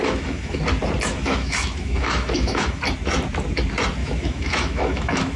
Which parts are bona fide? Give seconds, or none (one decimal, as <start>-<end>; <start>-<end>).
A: 0.6-1.1; 2.8-4.0